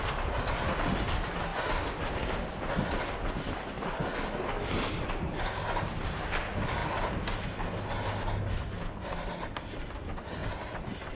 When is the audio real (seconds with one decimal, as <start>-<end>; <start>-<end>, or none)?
0.0-11.1